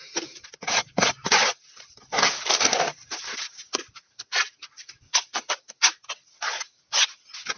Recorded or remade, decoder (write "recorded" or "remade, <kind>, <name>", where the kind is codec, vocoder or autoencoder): recorded